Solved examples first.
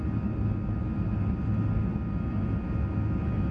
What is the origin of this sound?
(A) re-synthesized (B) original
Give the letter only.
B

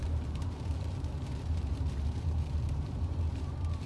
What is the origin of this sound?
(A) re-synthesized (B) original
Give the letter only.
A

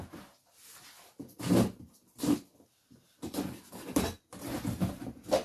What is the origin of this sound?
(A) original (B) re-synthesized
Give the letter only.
A